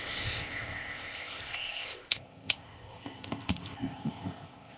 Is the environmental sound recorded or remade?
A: remade